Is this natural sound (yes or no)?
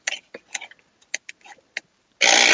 yes